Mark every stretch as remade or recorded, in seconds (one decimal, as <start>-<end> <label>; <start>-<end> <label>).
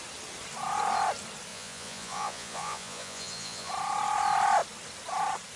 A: 0.0-1.5 recorded; 1.5-3.7 remade; 3.7-5.6 recorded